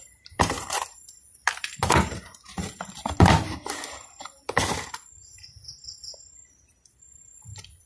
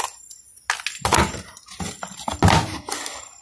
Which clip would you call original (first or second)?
second